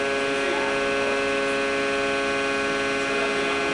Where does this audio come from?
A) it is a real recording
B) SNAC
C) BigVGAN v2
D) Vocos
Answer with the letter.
A